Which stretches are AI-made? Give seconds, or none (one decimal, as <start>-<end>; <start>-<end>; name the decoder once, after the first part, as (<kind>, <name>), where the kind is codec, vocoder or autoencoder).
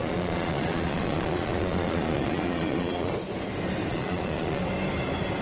0.0-3.1 (vocoder, Vocos); 3.9-4.6